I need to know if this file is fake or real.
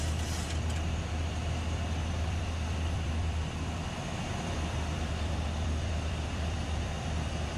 fake